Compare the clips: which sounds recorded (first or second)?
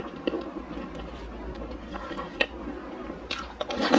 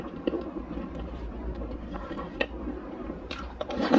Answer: first